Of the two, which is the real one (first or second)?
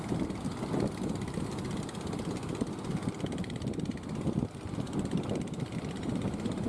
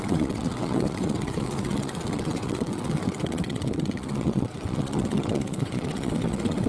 first